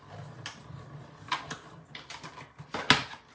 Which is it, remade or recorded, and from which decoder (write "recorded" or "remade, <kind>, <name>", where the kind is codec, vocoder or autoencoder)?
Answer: recorded